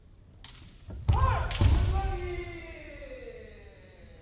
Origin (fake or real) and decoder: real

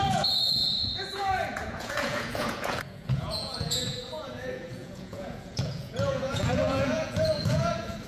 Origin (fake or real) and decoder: fake, vocoder, Vocos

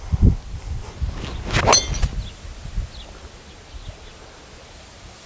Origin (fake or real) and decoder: real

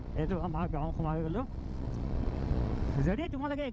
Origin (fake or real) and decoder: fake, vocoder, Vocos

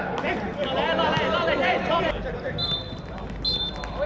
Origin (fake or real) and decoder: real